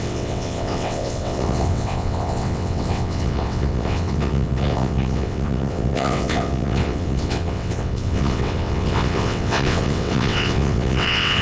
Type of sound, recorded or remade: remade